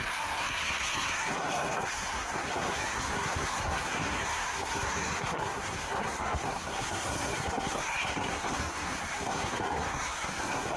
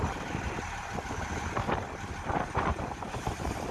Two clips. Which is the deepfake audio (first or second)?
first